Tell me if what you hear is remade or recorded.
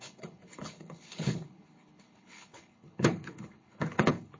remade